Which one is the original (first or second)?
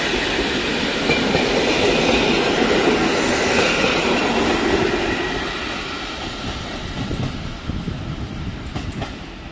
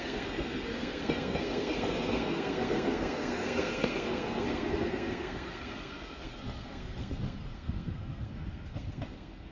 first